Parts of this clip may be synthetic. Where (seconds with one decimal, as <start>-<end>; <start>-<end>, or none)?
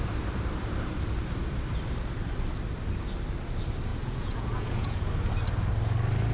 3.9-5.1